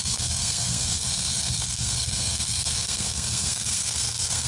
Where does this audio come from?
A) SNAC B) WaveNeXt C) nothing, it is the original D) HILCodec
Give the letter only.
A